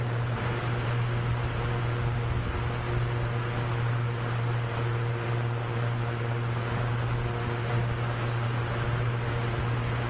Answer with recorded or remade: recorded